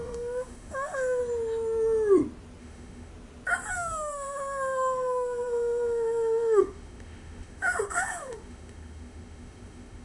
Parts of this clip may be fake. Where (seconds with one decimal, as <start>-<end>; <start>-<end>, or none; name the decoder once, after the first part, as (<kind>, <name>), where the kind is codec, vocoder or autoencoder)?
0.0-1.2 (autoencoder, DAC-VAE); 2.6-3.1; 3.7-10.0